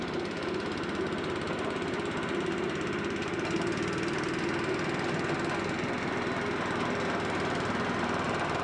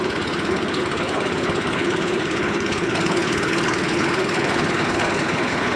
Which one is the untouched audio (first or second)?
first